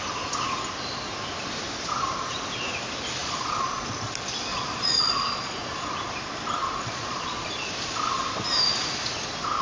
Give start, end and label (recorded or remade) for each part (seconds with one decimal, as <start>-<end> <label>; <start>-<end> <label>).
0.0-3.2 recorded; 3.2-3.9 remade; 3.9-4.5 recorded; 4.5-5.9 remade; 5.9-6.6 recorded; 6.6-7.7 remade; 7.7-9.6 recorded